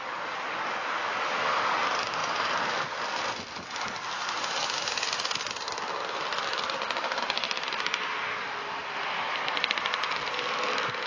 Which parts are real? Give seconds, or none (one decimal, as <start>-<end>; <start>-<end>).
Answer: 0.0-11.1